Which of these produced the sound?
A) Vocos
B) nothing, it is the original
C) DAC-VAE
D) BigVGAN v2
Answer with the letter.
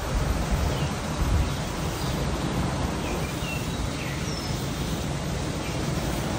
B